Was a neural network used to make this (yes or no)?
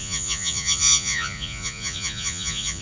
yes